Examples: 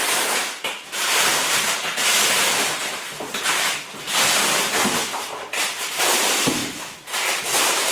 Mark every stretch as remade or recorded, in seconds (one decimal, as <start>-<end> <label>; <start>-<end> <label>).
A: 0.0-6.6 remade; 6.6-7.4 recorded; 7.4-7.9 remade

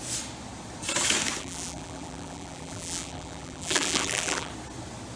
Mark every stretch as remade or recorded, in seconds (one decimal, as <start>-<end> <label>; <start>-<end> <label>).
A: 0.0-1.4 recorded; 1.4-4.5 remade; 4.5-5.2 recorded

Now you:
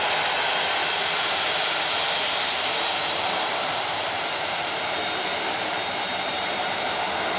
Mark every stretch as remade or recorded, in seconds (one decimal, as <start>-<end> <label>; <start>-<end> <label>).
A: 0.0-0.8 recorded; 0.8-4.8 remade; 4.8-5.3 recorded; 5.3-7.0 remade; 7.0-7.4 recorded

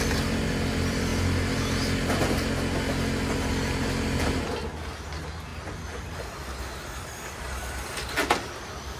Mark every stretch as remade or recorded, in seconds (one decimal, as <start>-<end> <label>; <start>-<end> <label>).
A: 0.0-9.0 recorded

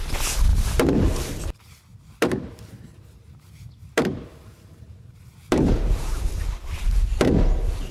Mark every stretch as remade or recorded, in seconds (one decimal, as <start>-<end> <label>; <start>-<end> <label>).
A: 0.0-0.5 recorded; 0.5-1.4 remade; 1.4-1.9 recorded; 1.9-6.2 remade; 6.2-7.9 recorded

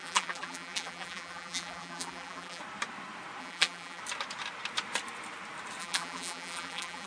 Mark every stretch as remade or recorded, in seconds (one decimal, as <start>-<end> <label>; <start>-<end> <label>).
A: 0.0-2.6 remade; 2.6-3.4 recorded; 3.4-4.0 remade; 4.0-5.8 recorded; 5.8-7.1 remade